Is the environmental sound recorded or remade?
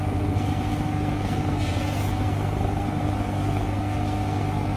remade